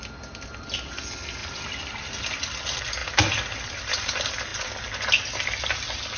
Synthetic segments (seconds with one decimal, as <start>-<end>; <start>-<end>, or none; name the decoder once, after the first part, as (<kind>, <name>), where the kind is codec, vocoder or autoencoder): 1.4-2.2 (vocoder, BigVGAN v2); 3.0-3.9